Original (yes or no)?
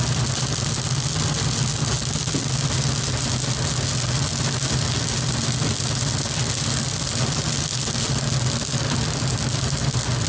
yes